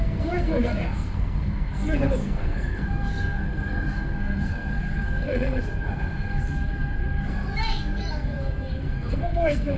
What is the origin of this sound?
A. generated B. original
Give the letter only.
A